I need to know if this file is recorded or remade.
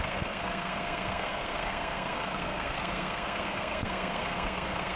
remade